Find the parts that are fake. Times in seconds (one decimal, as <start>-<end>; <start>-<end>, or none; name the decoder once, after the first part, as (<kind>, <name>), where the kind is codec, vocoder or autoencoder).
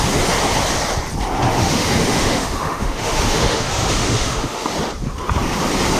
1.6-4.7 (autoencoder, DAC-VAE)